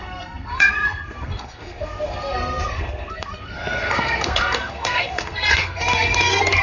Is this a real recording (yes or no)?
no